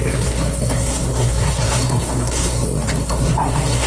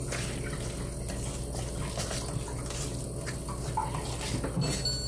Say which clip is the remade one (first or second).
first